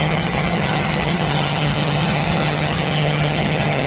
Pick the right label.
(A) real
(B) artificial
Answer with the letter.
B